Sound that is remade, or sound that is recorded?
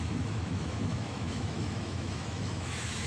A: remade